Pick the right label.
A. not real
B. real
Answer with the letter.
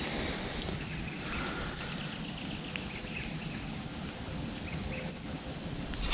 B